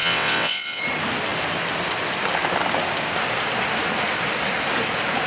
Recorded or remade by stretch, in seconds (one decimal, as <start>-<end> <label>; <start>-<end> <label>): 0.0-0.8 remade; 0.8-5.3 recorded